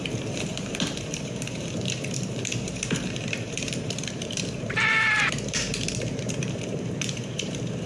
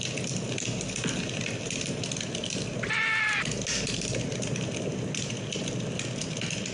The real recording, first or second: second